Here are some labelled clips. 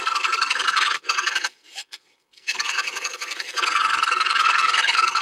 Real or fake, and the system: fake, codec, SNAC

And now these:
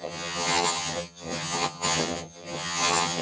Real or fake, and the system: fake, vocoder, HiFi-GAN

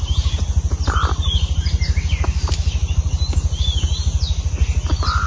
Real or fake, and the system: real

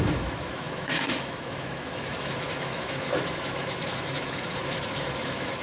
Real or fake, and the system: fake, autoencoder, DAC-VAE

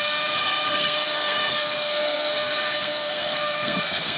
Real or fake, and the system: fake, codec, SNAC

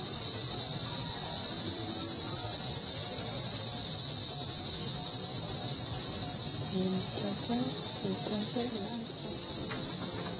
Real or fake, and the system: real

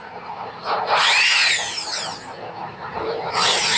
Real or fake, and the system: real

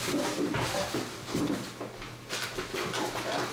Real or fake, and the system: real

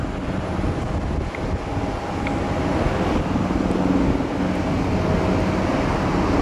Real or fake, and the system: real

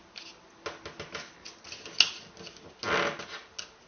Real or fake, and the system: real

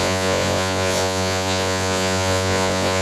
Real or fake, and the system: fake, vocoder, Vocos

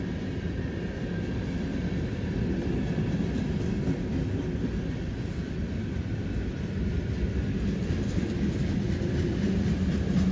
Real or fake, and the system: fake, vocoder, BigVGAN v2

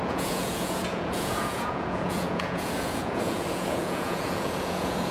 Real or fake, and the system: fake, vocoder, Vocos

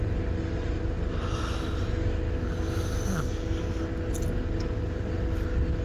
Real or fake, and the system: real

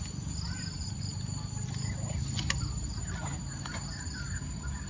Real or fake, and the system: real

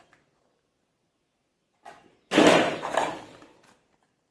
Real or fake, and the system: real